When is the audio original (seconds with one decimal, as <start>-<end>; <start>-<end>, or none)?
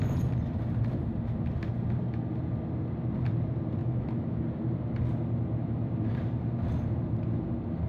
0.0-3.8; 4.4-7.9